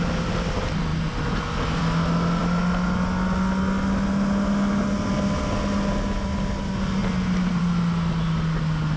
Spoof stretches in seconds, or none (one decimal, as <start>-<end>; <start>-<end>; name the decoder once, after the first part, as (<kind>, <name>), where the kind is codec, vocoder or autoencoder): none